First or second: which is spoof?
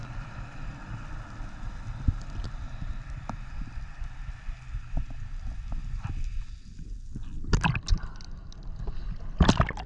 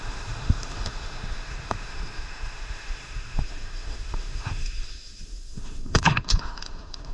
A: second